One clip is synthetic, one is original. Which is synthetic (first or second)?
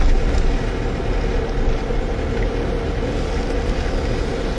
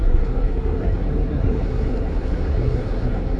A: second